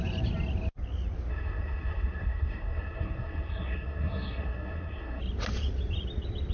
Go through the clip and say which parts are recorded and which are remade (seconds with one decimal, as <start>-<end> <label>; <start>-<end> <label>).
0.0-1.3 recorded; 1.3-5.2 remade; 5.2-6.5 recorded